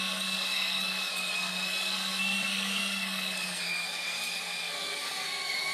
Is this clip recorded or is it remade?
remade